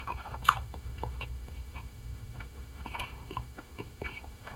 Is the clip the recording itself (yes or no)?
no